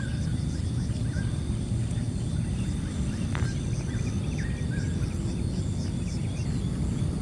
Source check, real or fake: real